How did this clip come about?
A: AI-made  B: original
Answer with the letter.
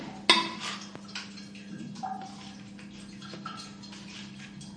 B